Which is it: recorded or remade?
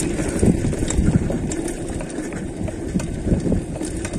recorded